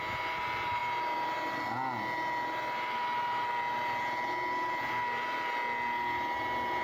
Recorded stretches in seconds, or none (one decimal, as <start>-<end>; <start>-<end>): 0.0-6.8

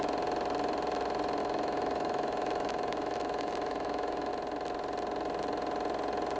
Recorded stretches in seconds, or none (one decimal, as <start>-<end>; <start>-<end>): 0.0-1.4; 4.3-6.4

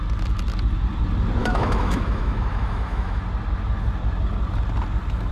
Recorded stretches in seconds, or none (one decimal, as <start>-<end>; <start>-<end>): 0.0-1.4; 3.2-5.3

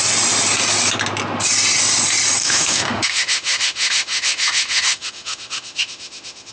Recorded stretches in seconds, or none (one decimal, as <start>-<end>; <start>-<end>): 0.0-2.4

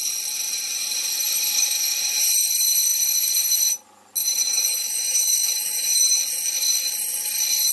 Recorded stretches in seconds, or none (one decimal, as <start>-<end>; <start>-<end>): 0.0-1.1; 2.0-4.2; 6.2-7.7

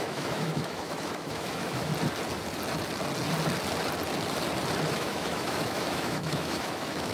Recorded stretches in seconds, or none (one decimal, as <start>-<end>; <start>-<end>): 1.9-4.9

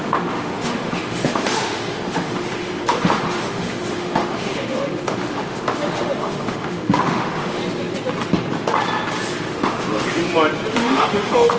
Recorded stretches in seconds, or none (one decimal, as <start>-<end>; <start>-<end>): 7.6-9.5; 10.2-10.7

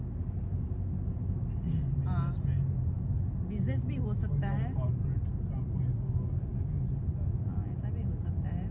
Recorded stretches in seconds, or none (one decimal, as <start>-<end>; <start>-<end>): 0.0-8.7